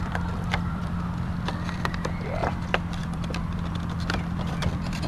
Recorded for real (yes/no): no